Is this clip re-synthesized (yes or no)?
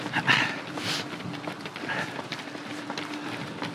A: no